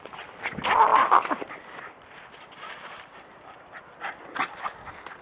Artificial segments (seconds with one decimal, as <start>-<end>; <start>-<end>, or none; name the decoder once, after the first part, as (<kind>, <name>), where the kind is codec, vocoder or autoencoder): none